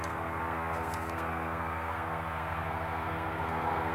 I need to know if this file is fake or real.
fake